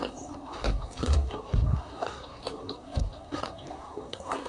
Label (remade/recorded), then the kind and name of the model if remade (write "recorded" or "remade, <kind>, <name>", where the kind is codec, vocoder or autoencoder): remade, codec, SNAC